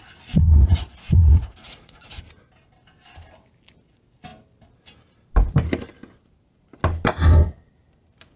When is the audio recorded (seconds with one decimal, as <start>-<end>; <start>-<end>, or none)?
0.0-0.6; 2.2-8.4